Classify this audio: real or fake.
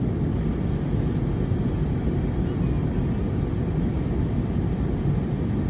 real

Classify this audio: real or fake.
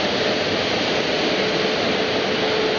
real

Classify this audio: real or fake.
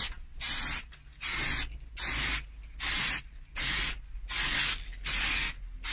real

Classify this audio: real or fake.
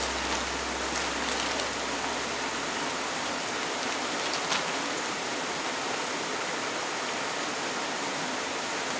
real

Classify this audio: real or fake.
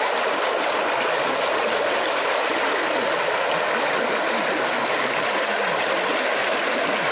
real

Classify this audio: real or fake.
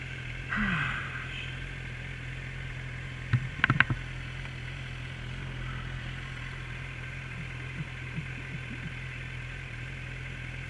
real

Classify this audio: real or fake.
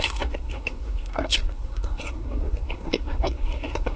fake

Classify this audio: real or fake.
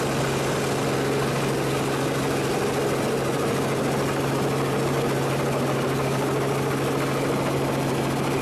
real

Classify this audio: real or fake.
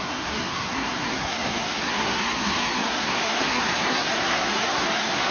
fake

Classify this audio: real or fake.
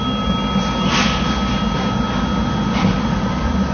real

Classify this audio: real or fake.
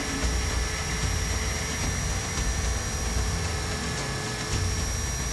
real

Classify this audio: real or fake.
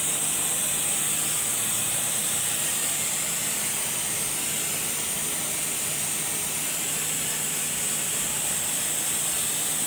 real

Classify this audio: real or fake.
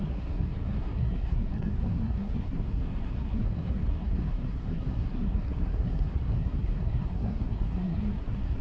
fake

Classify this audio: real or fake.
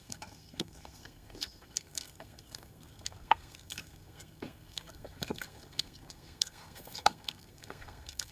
fake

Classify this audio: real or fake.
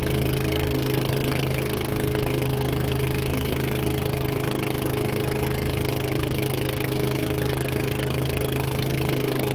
fake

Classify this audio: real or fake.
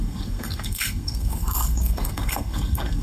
fake